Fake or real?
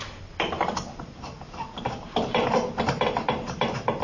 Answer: real